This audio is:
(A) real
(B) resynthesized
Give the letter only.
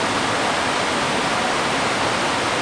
A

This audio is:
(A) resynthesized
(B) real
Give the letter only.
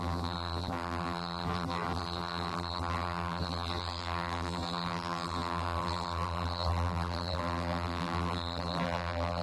A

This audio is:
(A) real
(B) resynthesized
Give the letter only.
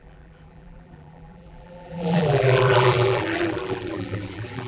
B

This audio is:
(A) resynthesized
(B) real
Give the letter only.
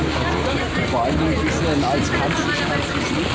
B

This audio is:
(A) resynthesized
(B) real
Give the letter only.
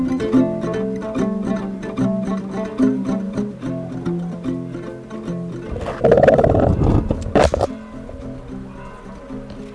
B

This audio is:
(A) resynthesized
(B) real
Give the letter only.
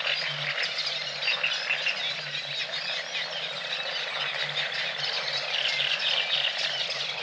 B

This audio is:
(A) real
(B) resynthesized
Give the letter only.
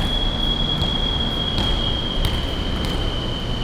A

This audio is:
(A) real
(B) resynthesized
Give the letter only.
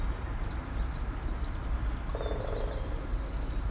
A